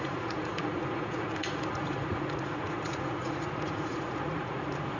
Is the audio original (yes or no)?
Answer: no